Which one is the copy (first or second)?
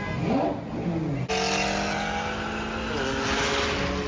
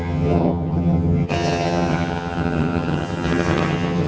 second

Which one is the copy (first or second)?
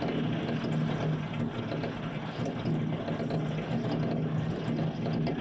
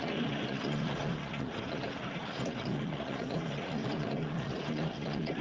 second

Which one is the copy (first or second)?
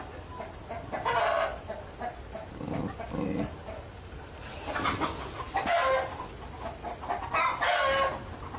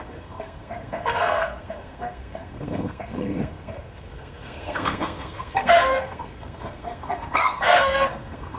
second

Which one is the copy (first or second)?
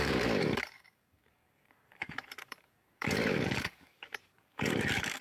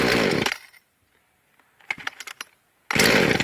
first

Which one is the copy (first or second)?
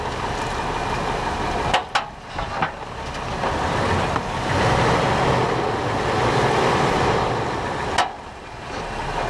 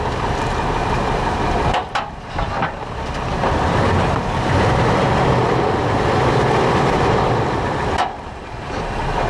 second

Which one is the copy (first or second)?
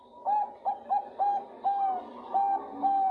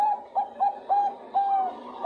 second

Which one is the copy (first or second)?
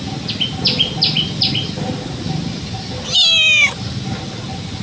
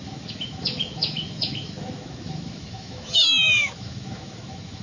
second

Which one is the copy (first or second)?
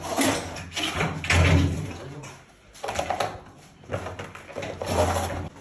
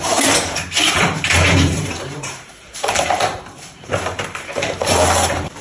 second